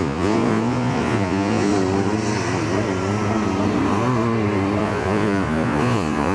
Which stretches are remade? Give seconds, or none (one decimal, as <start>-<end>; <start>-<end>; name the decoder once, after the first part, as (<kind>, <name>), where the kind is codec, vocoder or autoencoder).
0.0-1.7 (vocoder, Vocos); 4.8-6.3